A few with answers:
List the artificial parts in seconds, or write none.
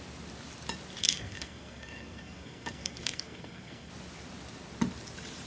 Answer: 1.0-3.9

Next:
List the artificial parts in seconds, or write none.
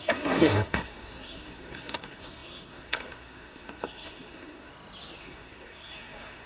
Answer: 0.0-4.7; 5.2-6.5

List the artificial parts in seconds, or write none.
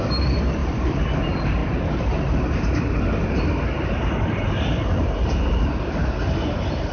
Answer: none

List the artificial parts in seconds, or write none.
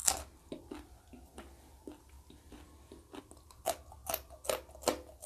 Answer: none